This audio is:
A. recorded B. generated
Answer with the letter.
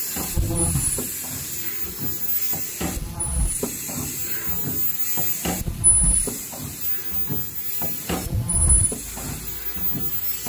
A